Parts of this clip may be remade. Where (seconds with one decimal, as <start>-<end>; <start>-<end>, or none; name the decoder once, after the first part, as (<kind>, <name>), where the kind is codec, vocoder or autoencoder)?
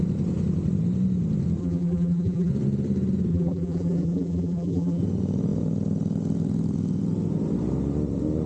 1.6-2.5 (vocoder, BigVGAN v2); 3.3-5.0